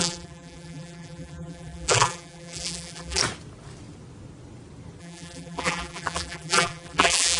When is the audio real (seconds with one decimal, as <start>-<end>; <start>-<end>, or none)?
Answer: 3.2-5.0

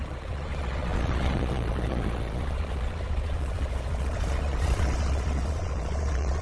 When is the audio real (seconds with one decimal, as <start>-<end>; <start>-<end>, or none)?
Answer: none

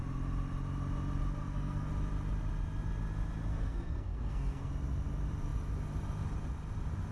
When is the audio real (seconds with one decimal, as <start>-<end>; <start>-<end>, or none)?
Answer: 0.0-1.4; 1.9-3.5; 4.7-7.1

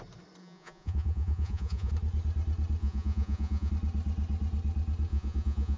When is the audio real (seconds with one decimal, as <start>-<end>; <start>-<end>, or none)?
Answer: 0.0-0.4; 1.9-2.8; 3.7-5.1